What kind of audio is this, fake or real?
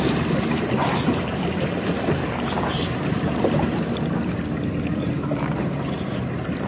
fake